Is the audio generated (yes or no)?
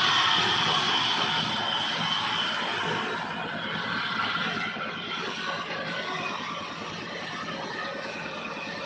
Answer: no